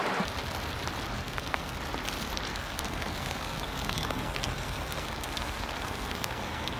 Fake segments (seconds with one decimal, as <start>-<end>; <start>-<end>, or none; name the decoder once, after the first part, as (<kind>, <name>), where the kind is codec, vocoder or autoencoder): 1.2-1.8 (codec, SNAC); 2.5-6.8